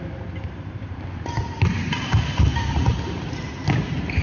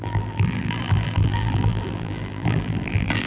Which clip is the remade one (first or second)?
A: second